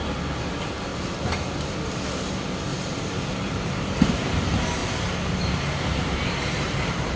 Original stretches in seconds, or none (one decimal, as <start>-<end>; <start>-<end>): 0.0-0.9; 1.8-2.7; 4.1-4.8